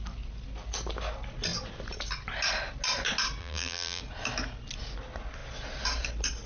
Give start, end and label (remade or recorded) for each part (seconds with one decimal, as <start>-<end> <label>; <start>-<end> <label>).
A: 0.0-3.4 recorded; 3.4-4.0 remade; 4.0-6.5 recorded